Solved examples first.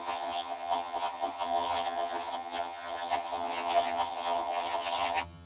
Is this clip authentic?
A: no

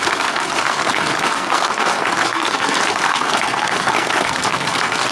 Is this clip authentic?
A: no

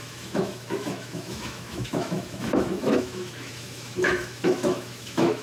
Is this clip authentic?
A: no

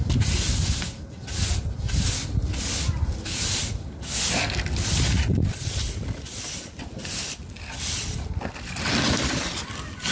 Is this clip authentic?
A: yes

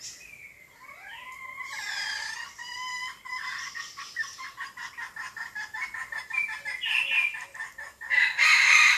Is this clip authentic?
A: yes